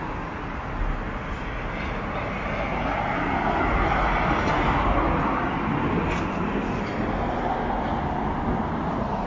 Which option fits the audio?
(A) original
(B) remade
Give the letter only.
A